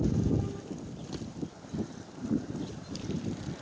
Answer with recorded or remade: recorded